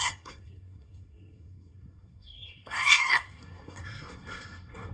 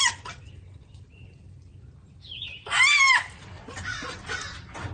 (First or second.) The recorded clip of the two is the second